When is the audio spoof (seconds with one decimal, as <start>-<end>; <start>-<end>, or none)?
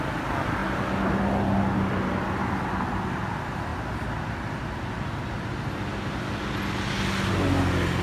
none